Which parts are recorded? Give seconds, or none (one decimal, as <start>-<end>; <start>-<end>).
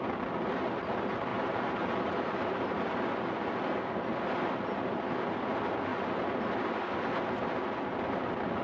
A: 0.0-1.3; 2.9-8.6